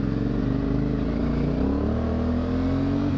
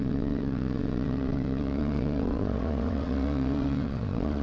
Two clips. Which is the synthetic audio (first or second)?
second